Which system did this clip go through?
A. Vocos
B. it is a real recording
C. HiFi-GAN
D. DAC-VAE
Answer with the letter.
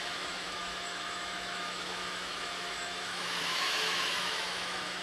D